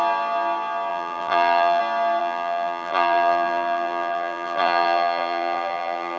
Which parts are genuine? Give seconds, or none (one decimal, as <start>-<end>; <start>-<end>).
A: 0.0-0.9; 1.8-2.2

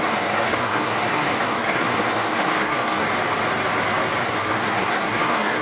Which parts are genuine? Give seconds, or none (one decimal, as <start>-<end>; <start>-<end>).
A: 3.0-4.2

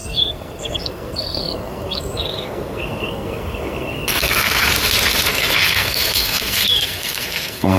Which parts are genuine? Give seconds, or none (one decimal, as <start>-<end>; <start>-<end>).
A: 4.7-5.3